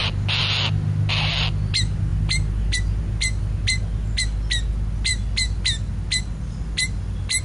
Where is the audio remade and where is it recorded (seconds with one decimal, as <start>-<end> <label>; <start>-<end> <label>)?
0.0-7.4 recorded